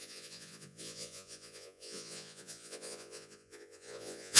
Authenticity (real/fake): fake